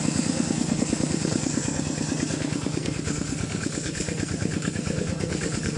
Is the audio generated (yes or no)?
yes